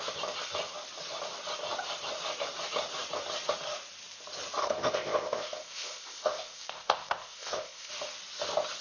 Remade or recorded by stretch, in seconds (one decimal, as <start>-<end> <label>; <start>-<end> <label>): 0.0-4.6 recorded; 4.6-7.9 remade; 7.9-8.8 recorded